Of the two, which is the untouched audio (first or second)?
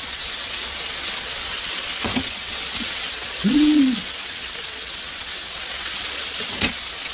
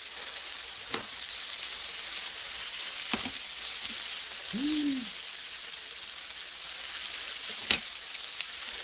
second